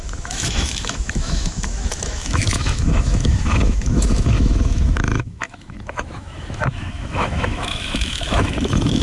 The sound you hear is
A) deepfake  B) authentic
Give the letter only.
A